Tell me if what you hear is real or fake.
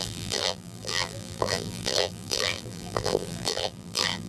fake